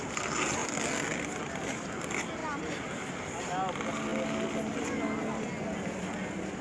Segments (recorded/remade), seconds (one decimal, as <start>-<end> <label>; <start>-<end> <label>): 0.0-6.6 recorded